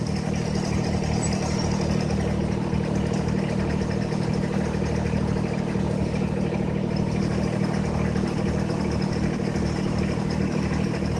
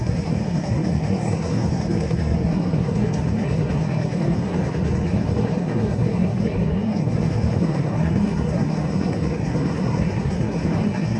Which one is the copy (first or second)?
second